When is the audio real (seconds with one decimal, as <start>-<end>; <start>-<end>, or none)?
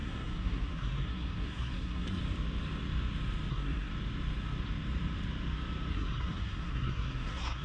2.2-3.5; 3.9-5.9